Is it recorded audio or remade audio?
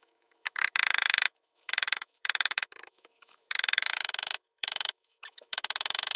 remade